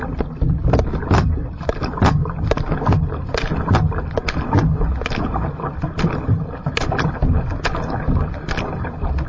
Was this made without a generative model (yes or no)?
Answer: yes